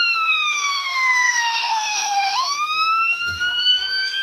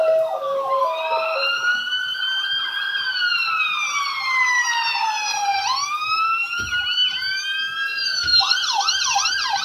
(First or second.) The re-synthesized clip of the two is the first